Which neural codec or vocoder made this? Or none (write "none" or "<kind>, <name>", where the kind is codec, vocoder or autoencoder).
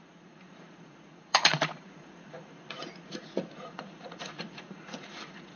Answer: vocoder, Vocos